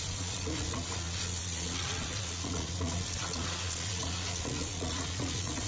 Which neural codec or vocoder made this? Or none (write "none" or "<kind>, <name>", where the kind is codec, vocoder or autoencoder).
vocoder, Vocos